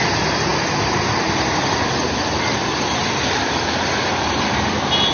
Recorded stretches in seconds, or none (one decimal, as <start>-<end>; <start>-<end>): 0.0-5.1